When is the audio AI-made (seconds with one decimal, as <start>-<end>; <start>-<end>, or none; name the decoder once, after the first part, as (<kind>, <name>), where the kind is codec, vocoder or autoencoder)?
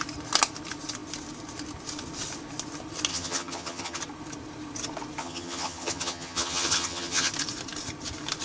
3.1-4.0 (vocoder, HiFi-GAN); 5.2-7.3